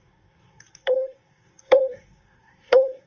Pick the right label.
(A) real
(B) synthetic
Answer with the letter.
B